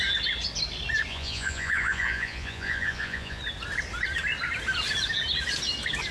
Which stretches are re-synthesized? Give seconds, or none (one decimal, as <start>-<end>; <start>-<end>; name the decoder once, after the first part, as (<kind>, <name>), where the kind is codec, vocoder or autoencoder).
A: 1.1-3.4 (vocoder, Vocos)